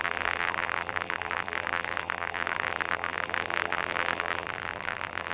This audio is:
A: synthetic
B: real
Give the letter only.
A